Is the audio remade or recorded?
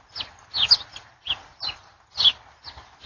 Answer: recorded